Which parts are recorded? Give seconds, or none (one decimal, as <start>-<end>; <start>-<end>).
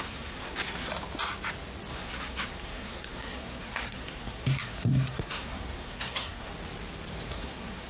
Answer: 0.9-1.9; 6.5-7.3